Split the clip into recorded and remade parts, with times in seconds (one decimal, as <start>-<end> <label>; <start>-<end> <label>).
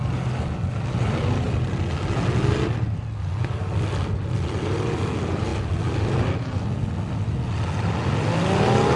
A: 0.0-9.0 recorded